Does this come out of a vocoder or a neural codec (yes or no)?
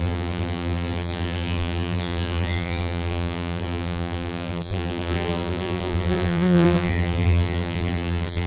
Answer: yes